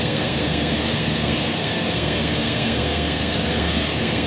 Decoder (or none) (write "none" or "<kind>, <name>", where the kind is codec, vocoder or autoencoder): codec, SNAC